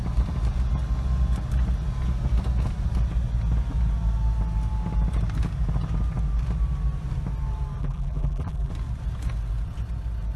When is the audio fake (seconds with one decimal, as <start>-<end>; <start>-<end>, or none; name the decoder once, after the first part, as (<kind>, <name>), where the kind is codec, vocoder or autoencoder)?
7.8-8.7 (vocoder, BigVGAN v2)